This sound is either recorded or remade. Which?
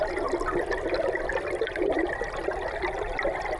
recorded